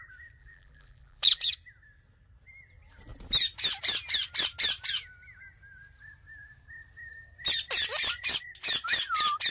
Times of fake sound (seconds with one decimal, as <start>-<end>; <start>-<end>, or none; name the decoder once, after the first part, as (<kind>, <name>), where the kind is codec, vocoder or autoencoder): 0.4-1.5 (vocoder, BigVGAN v2)